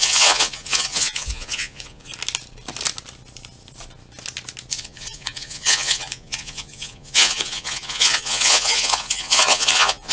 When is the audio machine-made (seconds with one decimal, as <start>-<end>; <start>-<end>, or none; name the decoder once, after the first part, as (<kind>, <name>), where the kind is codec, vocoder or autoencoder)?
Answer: 0.0-2.1 (vocoder, Vocos); 4.7-10.1